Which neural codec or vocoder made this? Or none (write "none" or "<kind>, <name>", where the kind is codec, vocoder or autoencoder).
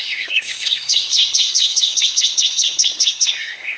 codec, SNAC